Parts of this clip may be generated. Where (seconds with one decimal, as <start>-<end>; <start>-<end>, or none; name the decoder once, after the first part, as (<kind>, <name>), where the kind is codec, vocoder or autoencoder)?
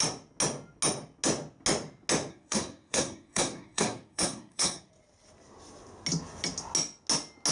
2.3-4.9 (codec, SNAC)